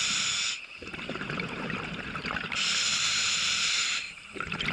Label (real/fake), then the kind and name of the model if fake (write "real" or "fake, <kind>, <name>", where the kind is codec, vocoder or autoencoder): fake, vocoder, BigVGAN v2